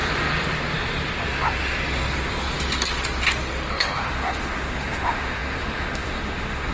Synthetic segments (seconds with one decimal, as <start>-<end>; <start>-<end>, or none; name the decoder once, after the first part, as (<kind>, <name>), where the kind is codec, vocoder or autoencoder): 3.7-6.7 (autoencoder, DAC-VAE)